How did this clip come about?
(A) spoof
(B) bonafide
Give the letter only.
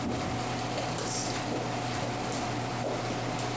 B